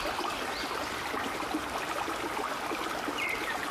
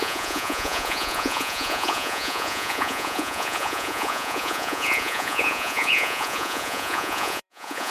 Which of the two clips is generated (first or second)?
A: second